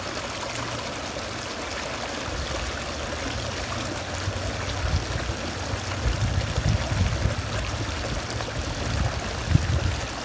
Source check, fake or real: real